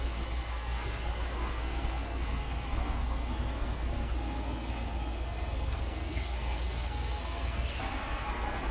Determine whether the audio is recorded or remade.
remade